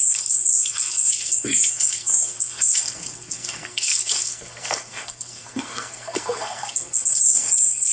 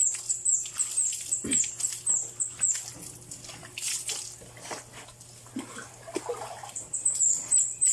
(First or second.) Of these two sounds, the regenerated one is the first